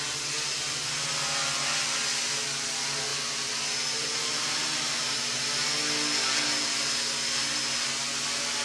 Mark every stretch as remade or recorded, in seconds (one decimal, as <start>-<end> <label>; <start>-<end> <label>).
0.0-3.1 recorded; 3.1-5.2 remade; 5.2-8.6 recorded

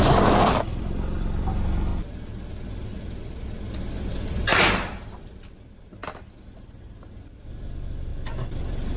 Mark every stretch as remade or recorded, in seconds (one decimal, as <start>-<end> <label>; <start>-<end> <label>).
0.0-1.9 remade; 1.9-2.5 recorded; 2.5-4.5 remade; 4.5-5.2 recorded; 5.2-6.0 remade; 6.0-7.2 recorded; 7.2-9.0 remade

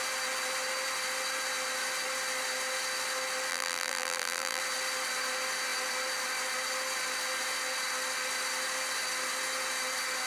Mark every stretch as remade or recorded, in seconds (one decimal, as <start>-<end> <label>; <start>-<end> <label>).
0.0-3.5 recorded; 3.5-4.6 remade; 4.6-10.3 recorded